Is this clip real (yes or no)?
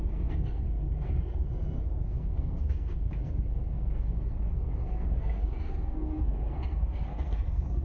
no